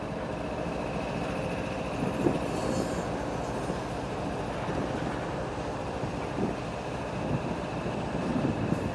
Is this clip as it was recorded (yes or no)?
yes